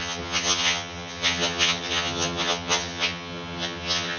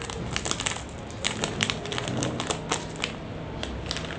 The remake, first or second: first